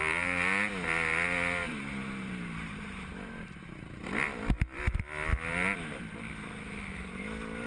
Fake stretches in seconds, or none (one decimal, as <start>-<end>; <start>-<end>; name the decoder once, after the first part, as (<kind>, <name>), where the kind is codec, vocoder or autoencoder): 1.6-5.0 (vocoder, BigVGAN v2)